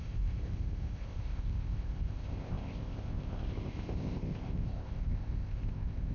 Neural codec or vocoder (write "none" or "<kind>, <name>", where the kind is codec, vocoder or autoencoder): codec, ZipCodec